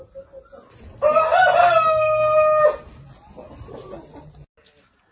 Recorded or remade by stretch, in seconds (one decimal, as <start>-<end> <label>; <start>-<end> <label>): 0.0-5.1 recorded